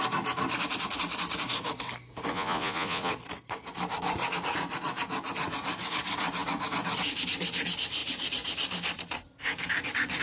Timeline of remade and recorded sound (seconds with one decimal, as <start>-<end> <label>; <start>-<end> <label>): 0.0-2.3 recorded; 2.3-3.1 remade; 3.1-10.2 recorded